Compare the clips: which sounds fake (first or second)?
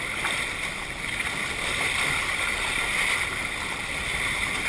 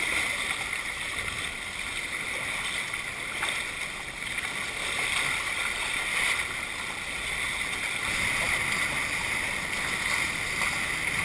first